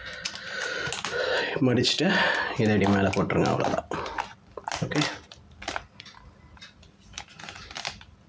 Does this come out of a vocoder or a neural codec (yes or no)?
no